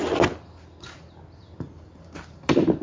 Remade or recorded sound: recorded